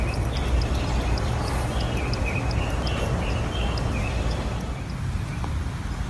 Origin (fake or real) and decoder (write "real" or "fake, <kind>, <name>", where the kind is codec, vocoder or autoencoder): real